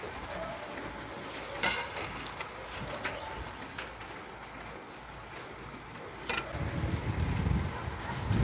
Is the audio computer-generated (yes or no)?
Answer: no